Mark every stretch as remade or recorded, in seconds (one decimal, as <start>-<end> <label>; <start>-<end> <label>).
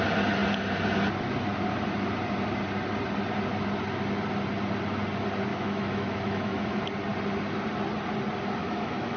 0.0-5.5 recorded; 5.5-6.8 remade; 6.8-8.6 recorded; 8.6-9.2 remade